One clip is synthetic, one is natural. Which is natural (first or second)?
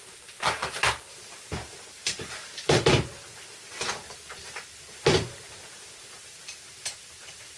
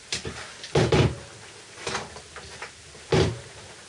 second